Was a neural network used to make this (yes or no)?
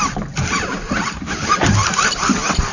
no